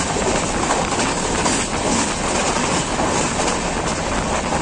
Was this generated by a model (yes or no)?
no